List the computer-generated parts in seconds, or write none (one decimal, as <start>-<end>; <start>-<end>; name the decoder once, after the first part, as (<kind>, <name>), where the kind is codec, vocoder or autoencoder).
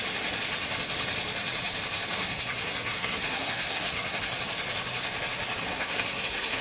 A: 2.2-4.3 (codec, SNAC); 5.6-6.6